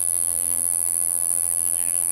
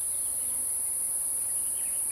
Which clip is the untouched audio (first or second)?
second